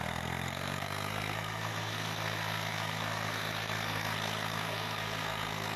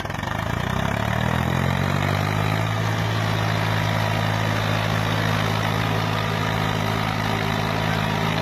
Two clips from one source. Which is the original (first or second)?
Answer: second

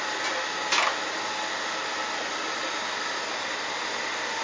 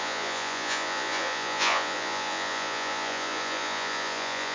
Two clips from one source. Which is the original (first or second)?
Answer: first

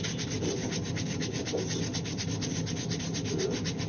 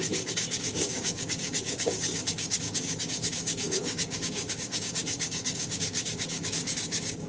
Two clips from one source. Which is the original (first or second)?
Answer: first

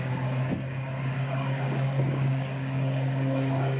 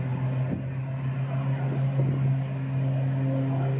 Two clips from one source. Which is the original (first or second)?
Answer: second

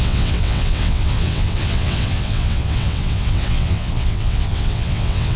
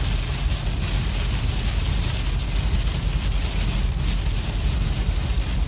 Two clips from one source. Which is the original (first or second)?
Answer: second